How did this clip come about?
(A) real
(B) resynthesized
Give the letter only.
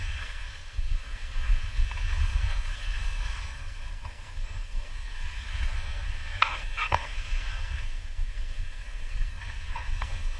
B